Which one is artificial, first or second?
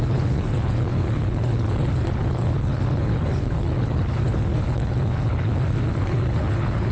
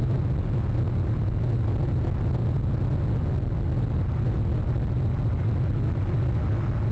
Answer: first